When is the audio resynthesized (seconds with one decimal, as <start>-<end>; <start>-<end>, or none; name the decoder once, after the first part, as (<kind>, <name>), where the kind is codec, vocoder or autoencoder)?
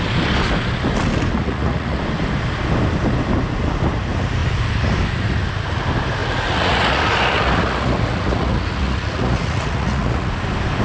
1.3-2.0 (vocoder, Vocos); 6.2-10.3